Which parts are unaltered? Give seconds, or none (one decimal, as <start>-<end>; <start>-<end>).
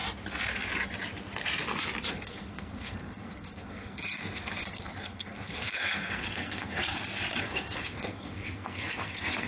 0.0-2.1; 6.8-7.4